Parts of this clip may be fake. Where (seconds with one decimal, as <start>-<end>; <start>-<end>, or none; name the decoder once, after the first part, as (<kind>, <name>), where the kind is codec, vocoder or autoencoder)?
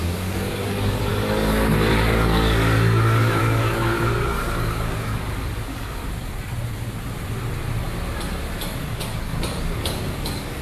0.0-6.0 (codec, DAC); 8.8-10.6